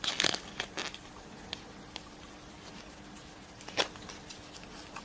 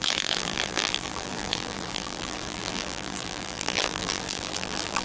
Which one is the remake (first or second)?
second